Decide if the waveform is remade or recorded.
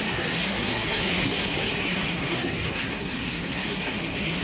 remade